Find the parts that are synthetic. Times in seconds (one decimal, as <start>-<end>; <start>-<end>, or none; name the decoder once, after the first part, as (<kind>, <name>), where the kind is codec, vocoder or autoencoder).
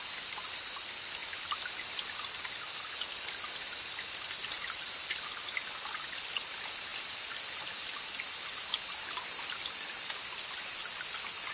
none